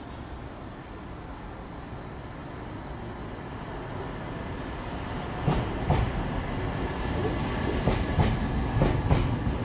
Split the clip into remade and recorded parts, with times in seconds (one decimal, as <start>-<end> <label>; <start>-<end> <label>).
0.0-9.6 recorded